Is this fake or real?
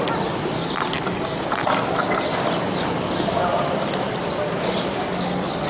real